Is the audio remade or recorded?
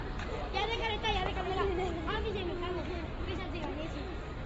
recorded